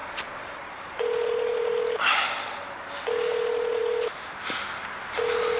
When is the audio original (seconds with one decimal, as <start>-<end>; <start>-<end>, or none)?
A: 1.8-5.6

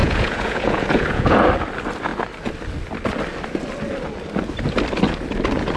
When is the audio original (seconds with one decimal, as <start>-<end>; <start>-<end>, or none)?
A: 1.5-5.8

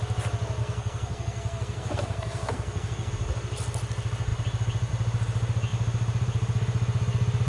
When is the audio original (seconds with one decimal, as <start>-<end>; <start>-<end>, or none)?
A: 0.0-0.6; 3.1-7.5

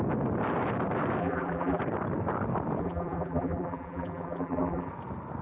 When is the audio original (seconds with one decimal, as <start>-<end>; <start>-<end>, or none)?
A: 0.0-1.2; 1.8-2.8; 4.9-5.4

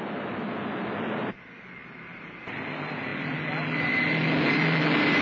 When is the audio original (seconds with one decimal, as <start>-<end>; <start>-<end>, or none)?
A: 0.0-5.2

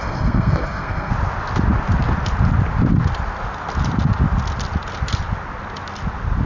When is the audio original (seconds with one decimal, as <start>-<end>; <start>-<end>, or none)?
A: 1.1-6.5

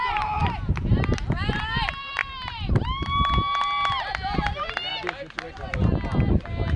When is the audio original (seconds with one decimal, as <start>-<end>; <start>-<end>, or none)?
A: 0.0-0.4; 1.6-2.2; 2.7-6.8